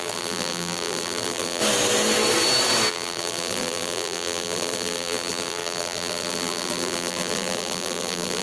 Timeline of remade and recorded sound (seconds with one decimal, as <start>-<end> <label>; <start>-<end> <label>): 0.0-1.6 remade; 1.6-2.9 recorded; 2.9-8.4 remade